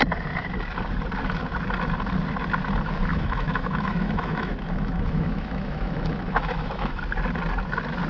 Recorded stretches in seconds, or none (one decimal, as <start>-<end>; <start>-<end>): 0.0-3.1; 7.0-8.1